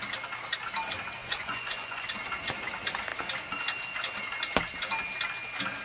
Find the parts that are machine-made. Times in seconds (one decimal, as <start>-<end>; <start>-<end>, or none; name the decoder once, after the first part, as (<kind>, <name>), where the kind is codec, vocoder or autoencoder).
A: 1.2-2.1 (vocoder, Vocos)